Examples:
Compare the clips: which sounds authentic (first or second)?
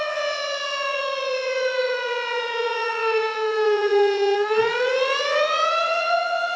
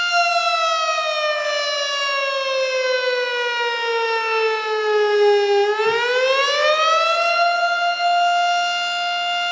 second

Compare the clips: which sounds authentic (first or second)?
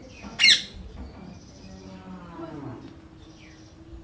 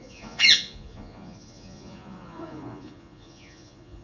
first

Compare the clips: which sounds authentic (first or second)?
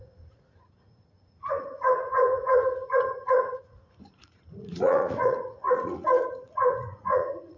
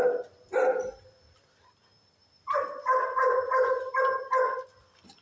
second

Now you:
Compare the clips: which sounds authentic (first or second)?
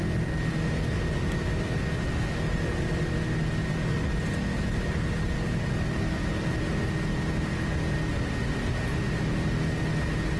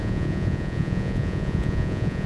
first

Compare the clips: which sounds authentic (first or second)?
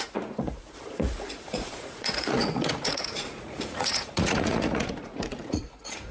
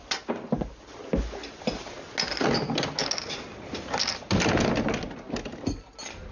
second